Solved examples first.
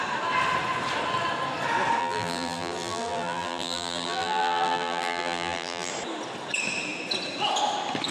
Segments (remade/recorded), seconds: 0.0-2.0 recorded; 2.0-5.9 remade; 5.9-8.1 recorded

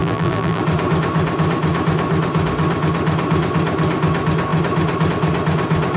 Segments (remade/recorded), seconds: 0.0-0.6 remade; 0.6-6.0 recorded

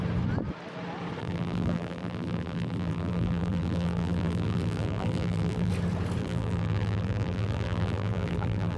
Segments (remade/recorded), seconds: 0.0-1.2 recorded; 1.2-5.7 remade; 5.7-6.2 recorded; 6.2-8.8 remade

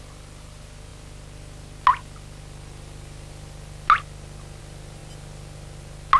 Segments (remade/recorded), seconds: 0.0-6.2 recorded